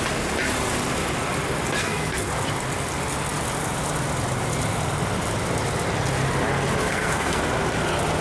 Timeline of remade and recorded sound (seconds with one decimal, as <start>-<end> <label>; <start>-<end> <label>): 0.0-1.8 recorded; 1.8-2.3 remade; 2.3-6.9 recorded; 6.9-7.4 remade; 7.4-8.2 recorded

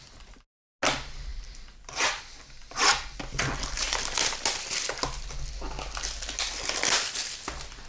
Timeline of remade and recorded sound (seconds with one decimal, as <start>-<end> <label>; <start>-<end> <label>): 0.0-1.3 recorded; 1.3-2.2 remade; 2.2-7.9 recorded

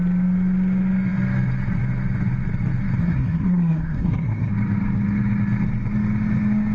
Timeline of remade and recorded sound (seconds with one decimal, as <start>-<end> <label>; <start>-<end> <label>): 0.0-3.0 recorded; 3.0-4.5 remade; 4.5-6.7 recorded

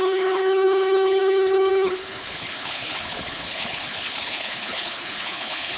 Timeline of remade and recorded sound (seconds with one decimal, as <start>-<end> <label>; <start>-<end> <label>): 0.0-5.8 remade

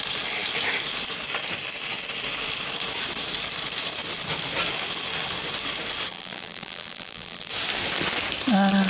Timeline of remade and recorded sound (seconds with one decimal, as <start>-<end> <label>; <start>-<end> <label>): 0.0-6.1 recorded; 6.1-7.5 remade; 7.5-8.9 recorded

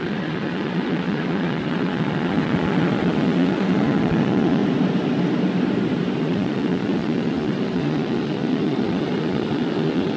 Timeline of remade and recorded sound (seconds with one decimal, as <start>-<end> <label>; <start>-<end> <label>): 0.0-4.6 remade; 4.6-6.2 recorded; 6.2-10.2 remade